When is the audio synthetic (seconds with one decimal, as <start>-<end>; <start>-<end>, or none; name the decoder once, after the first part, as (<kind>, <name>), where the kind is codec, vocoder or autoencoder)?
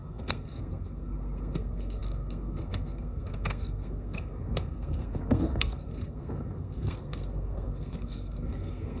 0.0-9.0 (codec, SNAC)